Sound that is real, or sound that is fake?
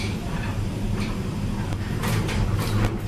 real